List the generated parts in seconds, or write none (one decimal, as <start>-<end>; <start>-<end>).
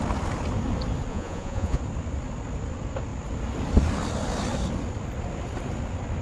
1.1-1.8